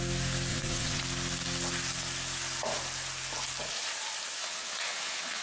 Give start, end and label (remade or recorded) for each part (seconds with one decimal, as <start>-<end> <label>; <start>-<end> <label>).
0.0-0.5 recorded; 0.5-1.0 remade; 1.0-4.4 recorded; 4.4-5.4 remade